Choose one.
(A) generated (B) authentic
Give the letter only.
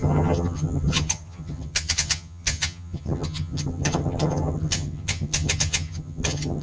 A